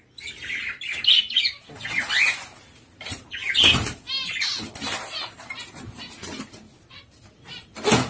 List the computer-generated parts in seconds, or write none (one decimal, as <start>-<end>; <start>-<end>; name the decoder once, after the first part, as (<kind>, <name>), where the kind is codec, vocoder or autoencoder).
none